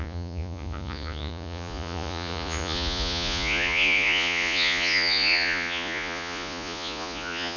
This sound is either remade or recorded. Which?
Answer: remade